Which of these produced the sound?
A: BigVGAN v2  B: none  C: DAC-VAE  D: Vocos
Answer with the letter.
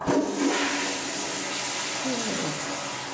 B